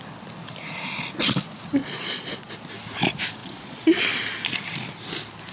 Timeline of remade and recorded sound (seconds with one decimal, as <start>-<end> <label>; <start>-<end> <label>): 0.0-1.8 recorded; 1.8-2.5 remade; 2.5-3.4 recorded; 3.4-4.0 remade; 4.0-5.5 recorded

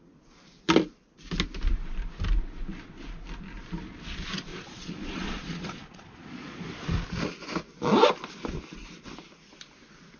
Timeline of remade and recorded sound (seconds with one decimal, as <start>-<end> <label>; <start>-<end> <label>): 0.0-4.5 recorded; 4.5-6.6 remade; 6.6-10.2 recorded

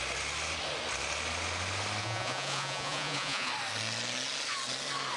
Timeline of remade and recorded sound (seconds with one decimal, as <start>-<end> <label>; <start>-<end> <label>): 0.0-2.0 recorded; 2.0-3.5 remade; 3.5-5.2 recorded

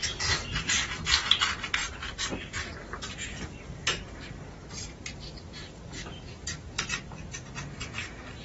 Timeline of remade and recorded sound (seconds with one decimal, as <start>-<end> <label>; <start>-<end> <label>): 0.0-0.5 remade; 0.5-8.4 recorded

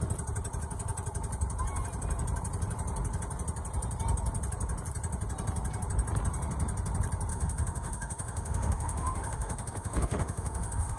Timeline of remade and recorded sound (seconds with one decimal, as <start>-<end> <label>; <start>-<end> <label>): 0.0-7.3 recorded; 7.3-11.0 remade

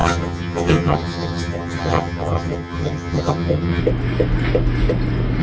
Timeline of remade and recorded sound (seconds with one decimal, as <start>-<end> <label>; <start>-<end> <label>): 0.0-3.8 remade; 3.8-5.4 recorded

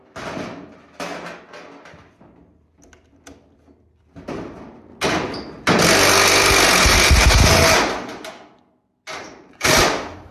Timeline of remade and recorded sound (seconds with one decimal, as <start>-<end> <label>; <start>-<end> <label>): 0.0-6.8 recorded; 6.8-7.7 remade; 7.7-9.2 recorded; 9.2-9.8 remade; 9.8-10.3 recorded

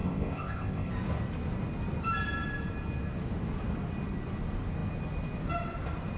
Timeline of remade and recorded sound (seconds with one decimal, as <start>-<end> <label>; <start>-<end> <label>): 0.0-0.9 remade; 0.9-6.2 recorded